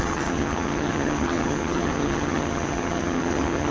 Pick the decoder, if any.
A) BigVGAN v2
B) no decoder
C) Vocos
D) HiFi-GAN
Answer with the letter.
D